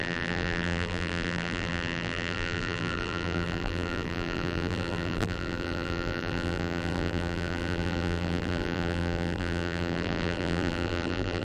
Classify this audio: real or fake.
fake